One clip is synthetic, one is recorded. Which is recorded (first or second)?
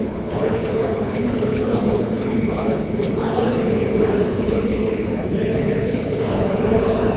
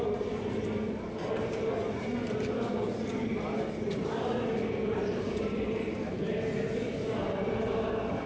second